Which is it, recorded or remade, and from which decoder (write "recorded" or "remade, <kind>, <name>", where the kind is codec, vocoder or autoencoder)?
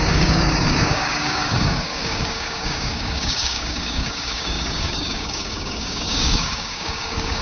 remade, codec, DAC